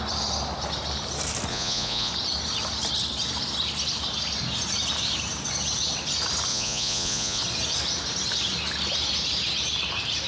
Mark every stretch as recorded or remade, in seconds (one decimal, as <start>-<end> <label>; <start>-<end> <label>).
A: 0.0-1.5 recorded; 1.5-2.1 remade; 2.1-6.5 recorded; 6.5-7.4 remade; 7.4-10.3 recorded